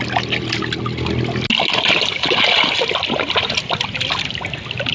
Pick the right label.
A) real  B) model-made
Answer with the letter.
A